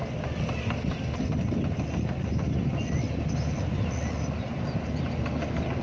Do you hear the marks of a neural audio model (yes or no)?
no